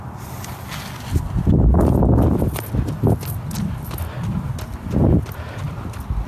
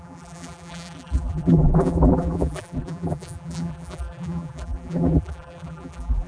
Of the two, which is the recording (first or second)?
first